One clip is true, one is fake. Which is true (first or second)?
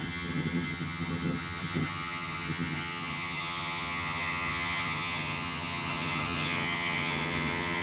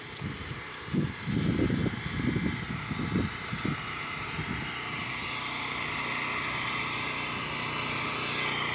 second